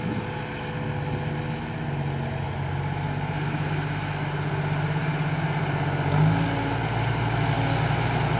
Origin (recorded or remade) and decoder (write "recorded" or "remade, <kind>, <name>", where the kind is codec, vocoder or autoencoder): recorded